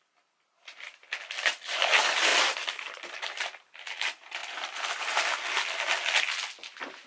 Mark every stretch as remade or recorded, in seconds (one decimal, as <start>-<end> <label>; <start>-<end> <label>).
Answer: 0.0-7.1 recorded